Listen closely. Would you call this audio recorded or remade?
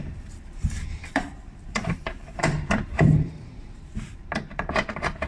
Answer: remade